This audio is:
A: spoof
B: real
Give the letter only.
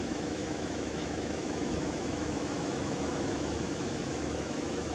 A